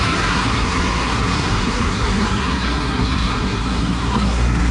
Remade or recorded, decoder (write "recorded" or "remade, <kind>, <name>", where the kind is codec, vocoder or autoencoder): remade, codec, SNAC